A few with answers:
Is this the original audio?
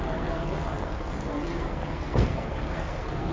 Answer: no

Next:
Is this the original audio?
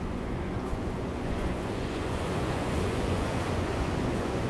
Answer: no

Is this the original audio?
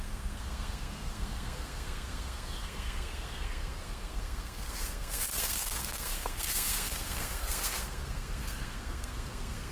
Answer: no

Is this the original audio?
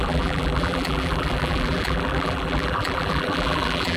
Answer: no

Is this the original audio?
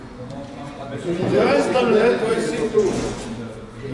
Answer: no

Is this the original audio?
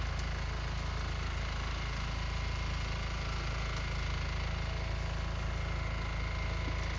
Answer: yes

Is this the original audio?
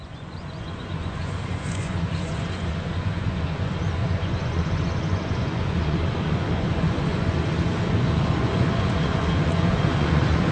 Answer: no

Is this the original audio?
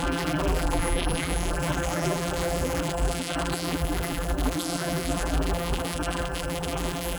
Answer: no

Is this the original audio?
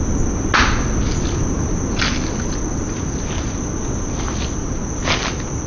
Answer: yes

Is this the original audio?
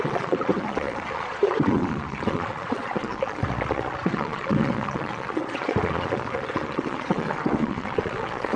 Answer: no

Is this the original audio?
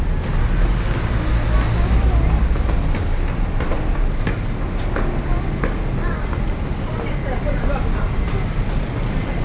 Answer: yes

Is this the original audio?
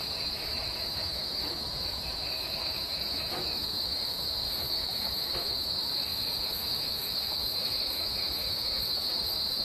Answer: no